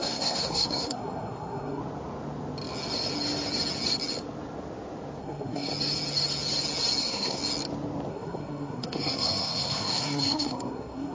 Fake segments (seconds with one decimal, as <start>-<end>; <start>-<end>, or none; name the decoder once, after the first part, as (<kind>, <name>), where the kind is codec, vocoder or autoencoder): 0.0-1.8 (codec, SNAC); 5.2-5.7; 7.0-7.4; 8.1-11.1